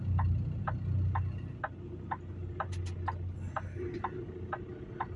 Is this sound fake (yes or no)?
no